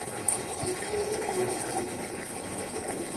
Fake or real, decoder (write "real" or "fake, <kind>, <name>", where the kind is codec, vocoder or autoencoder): fake, codec, HILCodec